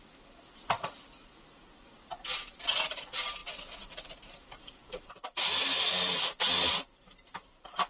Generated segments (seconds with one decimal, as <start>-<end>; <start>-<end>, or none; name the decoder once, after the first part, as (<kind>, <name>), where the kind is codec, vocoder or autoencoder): 3.4-7.5 (vocoder, BigVGAN v2)